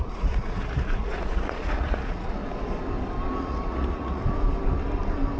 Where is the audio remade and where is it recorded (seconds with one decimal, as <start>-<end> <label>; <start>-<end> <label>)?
0.0-2.4 remade; 2.4-3.4 recorded; 3.4-4.2 remade; 4.2-5.4 recorded